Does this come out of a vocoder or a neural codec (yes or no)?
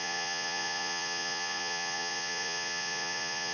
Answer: yes